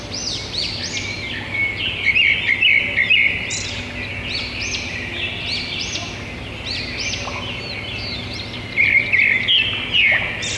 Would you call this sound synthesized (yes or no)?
no